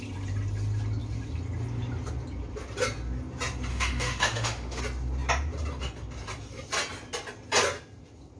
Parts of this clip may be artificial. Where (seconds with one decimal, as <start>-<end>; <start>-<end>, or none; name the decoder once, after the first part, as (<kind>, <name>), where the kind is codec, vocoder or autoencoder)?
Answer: 3.7-4.8 (autoencoder, DAC-VAE)